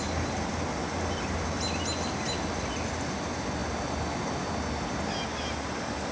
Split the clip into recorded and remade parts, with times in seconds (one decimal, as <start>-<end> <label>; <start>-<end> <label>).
0.0-6.1 recorded